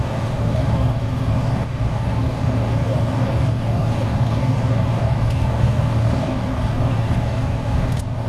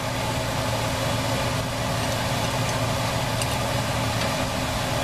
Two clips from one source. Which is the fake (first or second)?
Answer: first